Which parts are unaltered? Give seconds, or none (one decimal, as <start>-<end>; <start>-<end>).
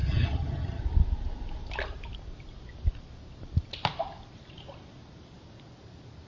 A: 0.8-6.3